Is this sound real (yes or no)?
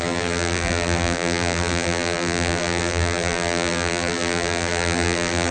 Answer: no